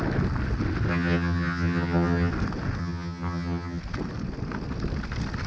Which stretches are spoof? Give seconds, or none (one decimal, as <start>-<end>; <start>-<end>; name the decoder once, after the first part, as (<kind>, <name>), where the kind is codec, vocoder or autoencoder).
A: 0.9-2.3 (vocoder, HiFi-GAN); 2.8-3.8